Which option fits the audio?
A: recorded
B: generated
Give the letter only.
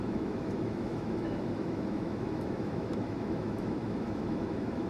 B